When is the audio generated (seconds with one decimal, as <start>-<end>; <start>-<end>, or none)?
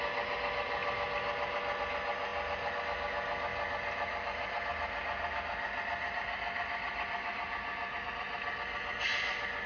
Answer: none